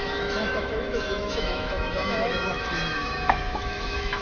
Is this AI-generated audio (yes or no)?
yes